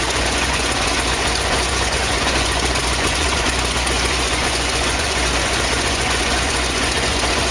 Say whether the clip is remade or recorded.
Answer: remade